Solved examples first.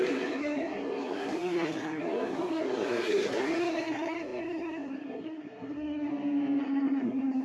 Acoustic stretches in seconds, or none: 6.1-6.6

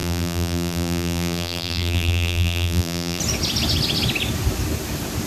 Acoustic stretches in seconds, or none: 3.2-5.3

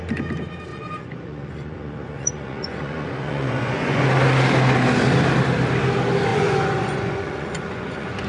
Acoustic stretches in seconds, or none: 0.0-0.7; 4.0-6.3

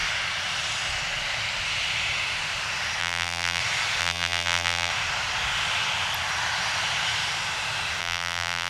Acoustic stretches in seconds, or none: 0.0-3.0; 3.6-4.0; 4.9-8.0